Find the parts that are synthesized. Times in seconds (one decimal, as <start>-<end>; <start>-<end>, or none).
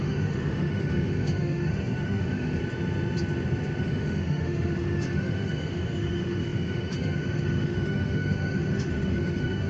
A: 0.0-2.6; 3.8-9.7